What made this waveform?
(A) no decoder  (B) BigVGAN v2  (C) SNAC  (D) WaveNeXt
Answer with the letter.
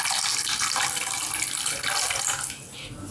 A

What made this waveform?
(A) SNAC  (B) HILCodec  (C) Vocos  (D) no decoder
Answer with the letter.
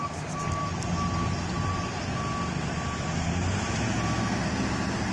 D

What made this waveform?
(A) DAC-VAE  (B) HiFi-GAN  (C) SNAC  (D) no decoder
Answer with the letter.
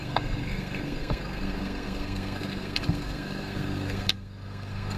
C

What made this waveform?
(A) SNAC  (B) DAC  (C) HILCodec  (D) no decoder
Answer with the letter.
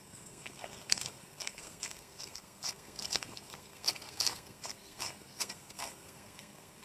A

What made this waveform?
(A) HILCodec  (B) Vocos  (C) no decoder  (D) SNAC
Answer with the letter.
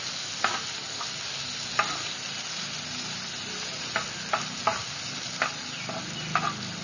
C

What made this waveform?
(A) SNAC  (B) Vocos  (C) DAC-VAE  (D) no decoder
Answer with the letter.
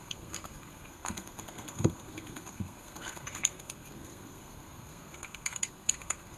A